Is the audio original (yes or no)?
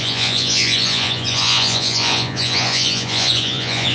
no